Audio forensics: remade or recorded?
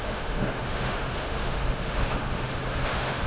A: remade